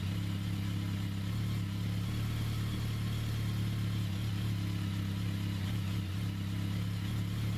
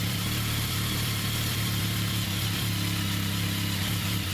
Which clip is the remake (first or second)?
second